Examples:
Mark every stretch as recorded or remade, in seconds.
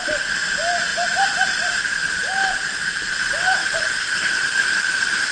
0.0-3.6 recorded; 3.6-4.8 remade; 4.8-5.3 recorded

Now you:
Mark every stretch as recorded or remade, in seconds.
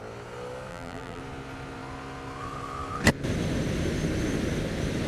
0.0-0.7 recorded; 0.7-1.2 remade; 1.2-5.1 recorded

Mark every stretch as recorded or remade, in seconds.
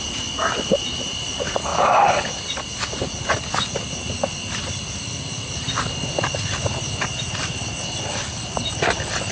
0.0-1.7 remade; 1.7-6.5 recorded; 6.5-9.3 remade